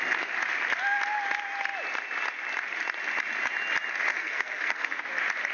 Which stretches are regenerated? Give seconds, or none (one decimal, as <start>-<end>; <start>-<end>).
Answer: 4.1-5.0